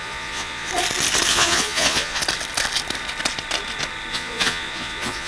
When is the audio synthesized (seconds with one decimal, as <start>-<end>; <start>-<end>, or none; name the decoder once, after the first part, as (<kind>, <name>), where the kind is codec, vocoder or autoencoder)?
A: 0.0-0.7 (vocoder, Vocos); 1.3-2.2; 4.1-5.3